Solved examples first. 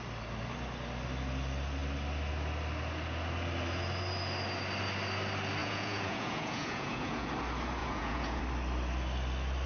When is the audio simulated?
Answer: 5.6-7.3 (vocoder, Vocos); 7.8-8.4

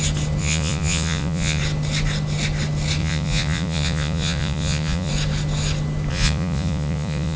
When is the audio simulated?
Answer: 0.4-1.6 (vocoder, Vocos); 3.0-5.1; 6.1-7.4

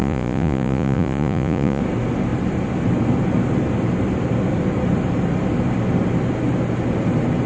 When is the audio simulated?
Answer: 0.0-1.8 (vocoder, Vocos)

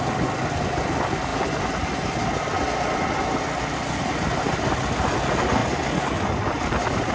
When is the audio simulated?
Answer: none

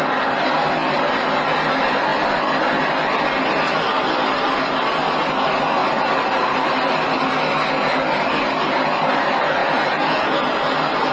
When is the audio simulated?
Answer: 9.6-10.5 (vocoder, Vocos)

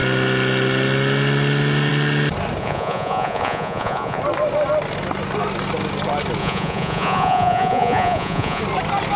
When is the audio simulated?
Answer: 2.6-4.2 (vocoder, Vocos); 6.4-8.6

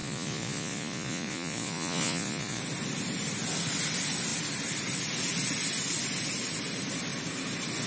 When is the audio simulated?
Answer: 0.0-2.6 (vocoder, Vocos)